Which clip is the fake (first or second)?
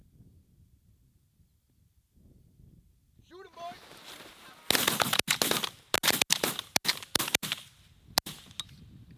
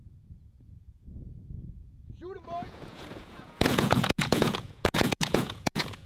second